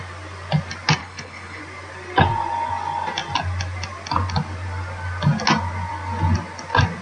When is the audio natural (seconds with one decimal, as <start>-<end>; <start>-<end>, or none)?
0.0-1.0; 1.6-7.0